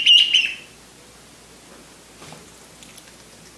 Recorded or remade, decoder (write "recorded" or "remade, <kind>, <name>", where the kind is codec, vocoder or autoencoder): recorded